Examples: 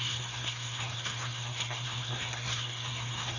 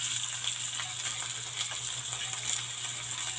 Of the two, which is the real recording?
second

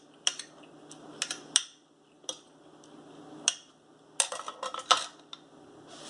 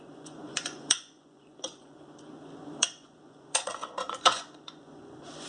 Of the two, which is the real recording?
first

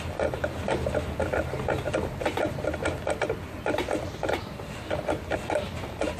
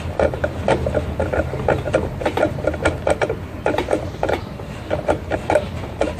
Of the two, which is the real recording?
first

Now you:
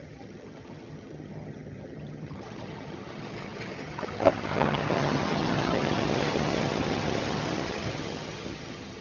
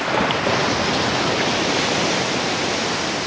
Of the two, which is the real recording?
second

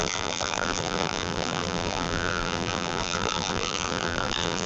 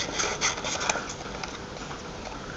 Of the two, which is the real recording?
second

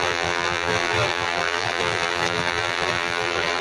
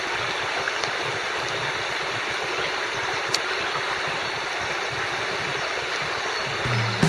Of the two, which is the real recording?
second